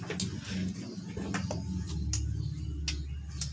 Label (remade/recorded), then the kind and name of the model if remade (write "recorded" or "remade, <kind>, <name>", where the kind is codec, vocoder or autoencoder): recorded